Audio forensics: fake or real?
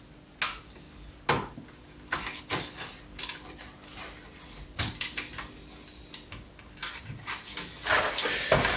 real